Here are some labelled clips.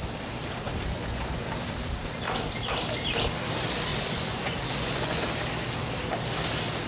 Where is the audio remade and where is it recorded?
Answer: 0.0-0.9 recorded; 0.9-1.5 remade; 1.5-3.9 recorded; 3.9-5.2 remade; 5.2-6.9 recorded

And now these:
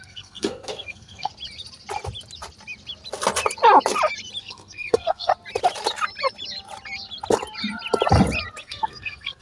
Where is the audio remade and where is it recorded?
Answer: 0.0-1.3 remade; 1.3-4.4 recorded; 4.4-5.3 remade; 5.3-8.6 recorded; 8.6-9.4 remade